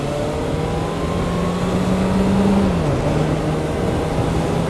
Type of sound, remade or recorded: recorded